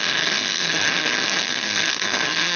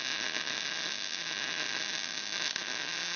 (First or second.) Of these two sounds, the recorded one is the second